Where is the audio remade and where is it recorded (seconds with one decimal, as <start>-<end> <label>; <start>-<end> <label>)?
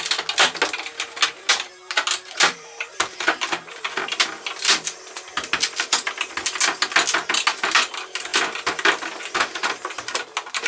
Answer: 0.0-1.5 recorded; 1.5-3.8 remade; 3.8-10.7 recorded